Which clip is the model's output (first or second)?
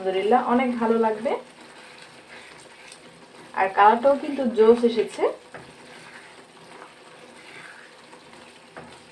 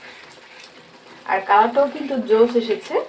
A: second